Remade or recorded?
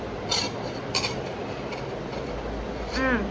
recorded